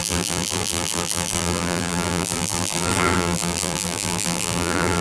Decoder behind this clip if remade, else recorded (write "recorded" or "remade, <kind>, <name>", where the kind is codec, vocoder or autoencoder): remade, vocoder, BigVGAN v2